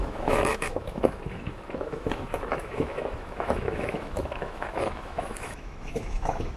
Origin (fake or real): fake